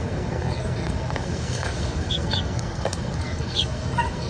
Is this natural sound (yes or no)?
no